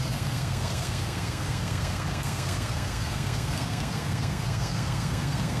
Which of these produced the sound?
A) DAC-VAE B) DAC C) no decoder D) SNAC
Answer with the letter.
D